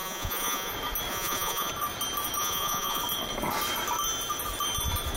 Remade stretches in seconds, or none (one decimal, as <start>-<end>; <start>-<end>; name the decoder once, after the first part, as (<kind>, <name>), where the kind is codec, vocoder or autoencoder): 0.0-0.7 (vocoder, Vocos); 1.1-1.7; 2.4-3.0